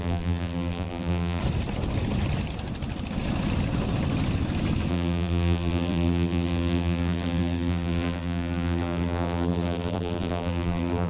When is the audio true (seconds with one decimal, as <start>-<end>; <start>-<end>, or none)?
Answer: 1.4-4.9